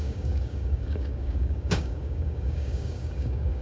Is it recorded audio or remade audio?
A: remade